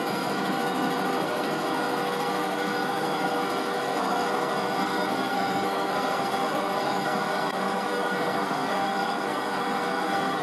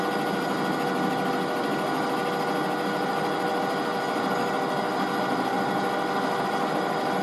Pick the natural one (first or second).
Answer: second